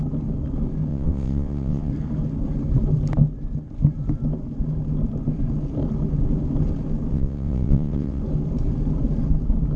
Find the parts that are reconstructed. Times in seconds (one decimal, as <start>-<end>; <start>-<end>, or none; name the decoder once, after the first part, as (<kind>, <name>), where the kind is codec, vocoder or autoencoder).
0.9-1.9 (vocoder, WaveNeXt); 7.1-8.2